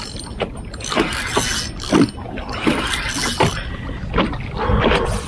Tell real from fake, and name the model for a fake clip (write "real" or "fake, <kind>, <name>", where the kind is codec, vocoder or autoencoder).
real